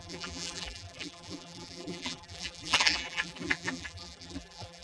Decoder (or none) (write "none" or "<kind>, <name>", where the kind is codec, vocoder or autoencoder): vocoder, BigVGAN v2